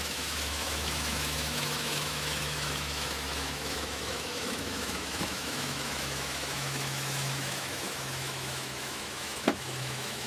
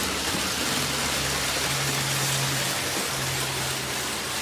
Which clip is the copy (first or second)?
first